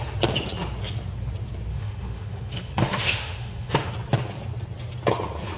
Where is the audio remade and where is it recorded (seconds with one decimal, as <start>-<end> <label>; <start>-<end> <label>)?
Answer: 0.0-1.7 recorded; 1.7-3.9 remade; 3.9-5.6 recorded